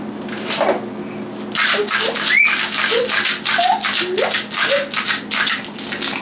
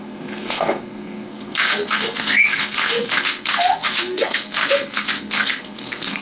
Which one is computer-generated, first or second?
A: second